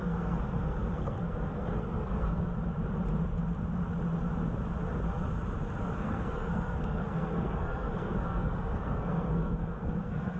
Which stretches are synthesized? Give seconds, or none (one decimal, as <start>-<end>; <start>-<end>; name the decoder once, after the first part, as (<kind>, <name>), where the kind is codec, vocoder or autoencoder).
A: 0.0-2.5 (codec, SNAC); 5.8-10.4